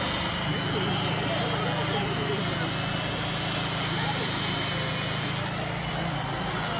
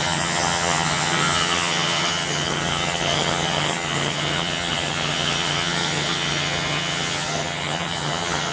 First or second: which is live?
first